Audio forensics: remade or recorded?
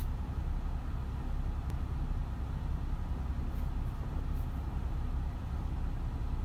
recorded